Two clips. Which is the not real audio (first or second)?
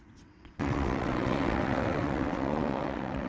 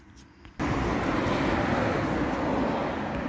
first